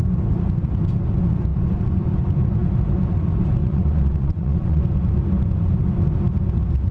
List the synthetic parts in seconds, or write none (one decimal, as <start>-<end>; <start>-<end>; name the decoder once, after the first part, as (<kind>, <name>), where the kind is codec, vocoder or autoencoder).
3.6-4.8 (vocoder, WaveNeXt)